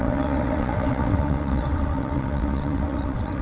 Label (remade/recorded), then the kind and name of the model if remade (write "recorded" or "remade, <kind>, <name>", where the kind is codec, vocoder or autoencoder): remade, vocoder, WaveNeXt